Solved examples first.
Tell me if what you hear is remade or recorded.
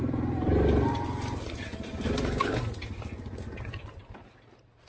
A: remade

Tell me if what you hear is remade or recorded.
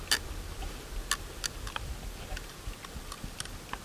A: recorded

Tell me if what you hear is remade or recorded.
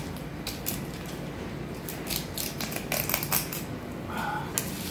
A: recorded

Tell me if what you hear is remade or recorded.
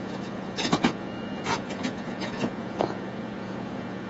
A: remade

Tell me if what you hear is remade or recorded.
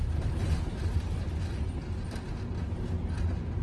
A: recorded